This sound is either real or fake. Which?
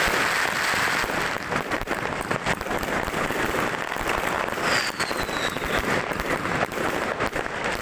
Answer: real